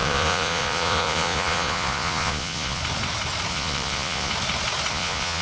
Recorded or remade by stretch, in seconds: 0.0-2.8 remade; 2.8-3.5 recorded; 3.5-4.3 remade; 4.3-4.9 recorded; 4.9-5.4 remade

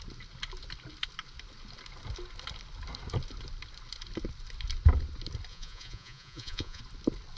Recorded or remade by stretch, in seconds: 0.0-5.5 recorded; 5.5-6.8 remade; 6.8-7.4 recorded

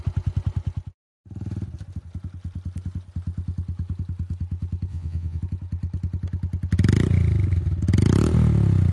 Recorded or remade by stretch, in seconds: 0.0-4.9 recorded; 4.9-5.4 remade; 5.4-8.9 recorded

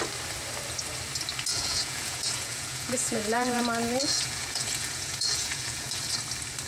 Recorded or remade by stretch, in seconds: 0.0-1.5 recorded; 1.5-3.6 remade; 3.6-4.0 recorded; 4.0-6.0 remade; 6.0-6.7 recorded

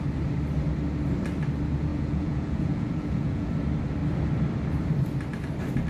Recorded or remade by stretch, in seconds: 0.0-1.9 recorded; 1.9-3.5 remade; 3.5-5.9 recorded

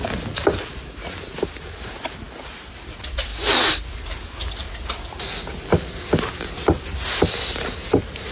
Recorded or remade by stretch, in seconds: 0.0-8.3 recorded